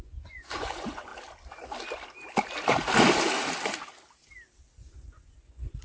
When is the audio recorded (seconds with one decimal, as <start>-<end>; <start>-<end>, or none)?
1.1-4.6